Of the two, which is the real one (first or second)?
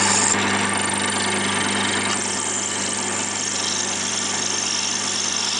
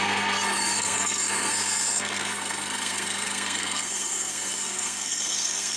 first